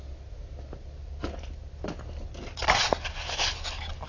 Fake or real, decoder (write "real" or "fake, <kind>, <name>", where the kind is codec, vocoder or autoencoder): real